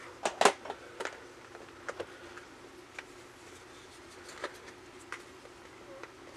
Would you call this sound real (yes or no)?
yes